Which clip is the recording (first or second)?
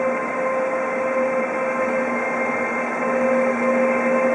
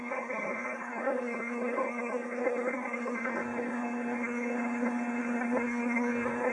first